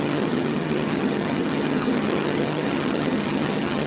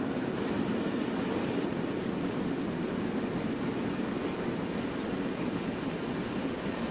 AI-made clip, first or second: first